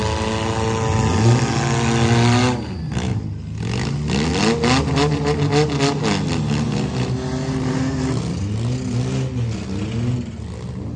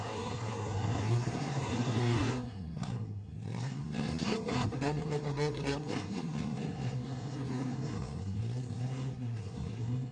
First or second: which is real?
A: first